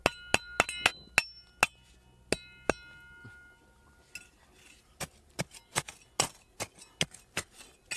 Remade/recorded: recorded